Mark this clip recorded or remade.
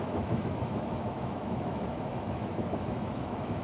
remade